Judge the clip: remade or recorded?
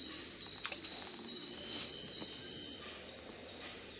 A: recorded